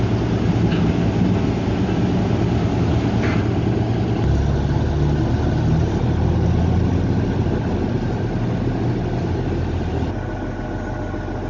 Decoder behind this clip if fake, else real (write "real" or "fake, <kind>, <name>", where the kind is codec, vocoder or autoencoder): real